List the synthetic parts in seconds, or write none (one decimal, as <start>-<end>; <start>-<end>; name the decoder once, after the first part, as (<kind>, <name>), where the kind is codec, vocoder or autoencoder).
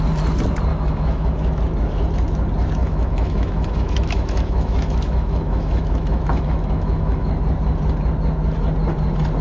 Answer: 0.7-1.6 (autoencoder, DAC-VAE); 2.8-7.3